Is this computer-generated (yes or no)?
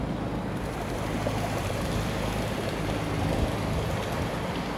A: no